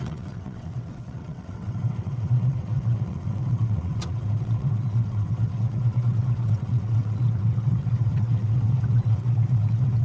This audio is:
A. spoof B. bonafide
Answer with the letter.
A